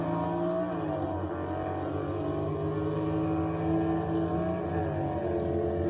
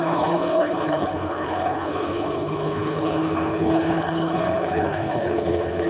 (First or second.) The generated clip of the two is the second